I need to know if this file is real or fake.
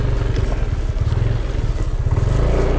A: real